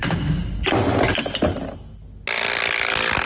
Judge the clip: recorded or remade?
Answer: recorded